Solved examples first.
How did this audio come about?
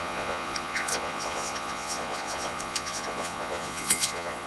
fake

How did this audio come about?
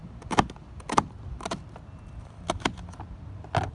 real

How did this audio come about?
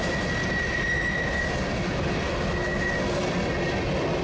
real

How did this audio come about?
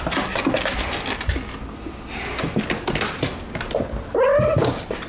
real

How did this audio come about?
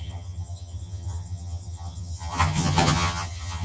fake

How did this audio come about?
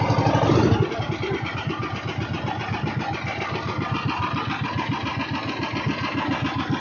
real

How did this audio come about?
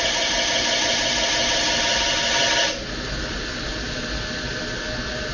real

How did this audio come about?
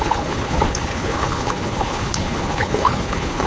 fake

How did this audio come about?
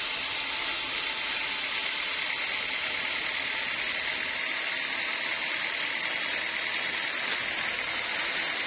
real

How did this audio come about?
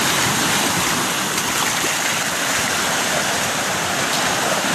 real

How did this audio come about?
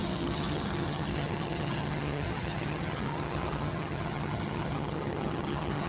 fake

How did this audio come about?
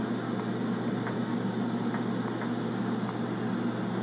real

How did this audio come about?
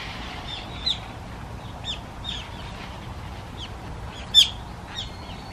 real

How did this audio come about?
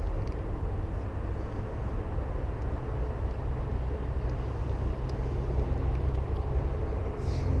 real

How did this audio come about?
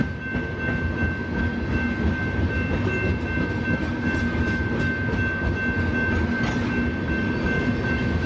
real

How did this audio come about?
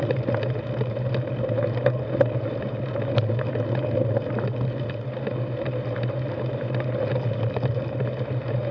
real